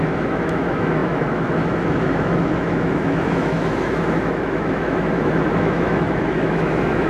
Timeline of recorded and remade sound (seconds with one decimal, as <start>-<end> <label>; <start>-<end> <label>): 0.0-7.1 remade